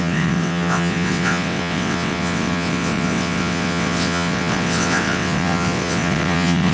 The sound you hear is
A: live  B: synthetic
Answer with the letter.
B